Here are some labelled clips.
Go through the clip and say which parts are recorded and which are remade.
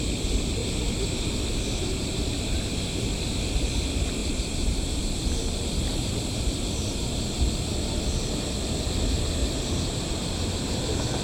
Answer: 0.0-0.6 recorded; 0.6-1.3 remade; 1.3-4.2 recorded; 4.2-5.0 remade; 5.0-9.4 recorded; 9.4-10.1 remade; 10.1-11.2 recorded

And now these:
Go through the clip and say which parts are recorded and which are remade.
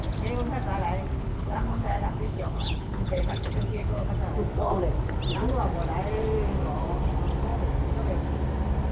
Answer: 0.0-1.2 recorded; 1.2-4.1 remade; 4.1-8.9 recorded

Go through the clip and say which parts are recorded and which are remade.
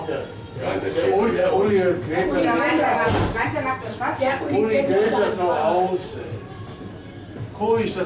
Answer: 0.0-8.1 recorded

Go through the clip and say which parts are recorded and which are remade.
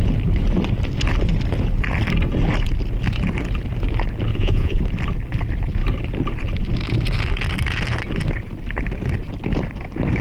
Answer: 0.0-4.3 recorded; 4.3-4.8 remade; 4.8-10.2 recorded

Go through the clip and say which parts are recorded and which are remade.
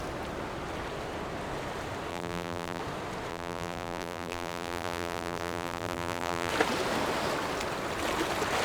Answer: 0.0-2.1 recorded; 2.1-2.8 remade; 2.8-3.3 recorded; 3.3-6.5 remade; 6.5-8.6 recorded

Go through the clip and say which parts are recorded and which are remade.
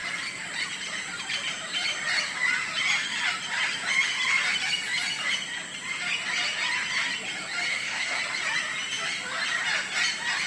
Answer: 0.0-7.7 recorded; 7.7-8.2 remade; 8.2-10.5 recorded